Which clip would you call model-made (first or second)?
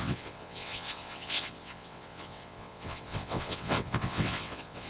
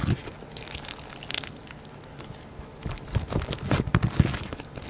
first